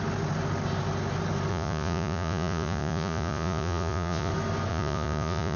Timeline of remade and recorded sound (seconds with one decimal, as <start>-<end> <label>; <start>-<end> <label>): 0.0-1.5 recorded; 1.5-4.3 remade; 4.3-4.7 recorded; 4.7-5.6 remade